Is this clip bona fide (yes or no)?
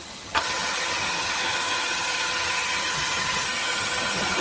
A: no